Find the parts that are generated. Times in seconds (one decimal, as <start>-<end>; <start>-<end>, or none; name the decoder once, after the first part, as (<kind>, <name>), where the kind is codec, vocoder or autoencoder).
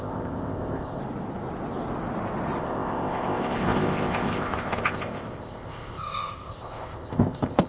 0.0-1.0 (codec, ZipCodec); 2.6-7.7